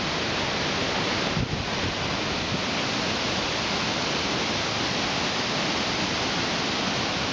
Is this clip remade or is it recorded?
recorded